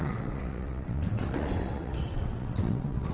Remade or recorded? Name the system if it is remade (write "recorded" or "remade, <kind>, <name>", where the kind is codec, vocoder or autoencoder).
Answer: remade, vocoder, WaveNeXt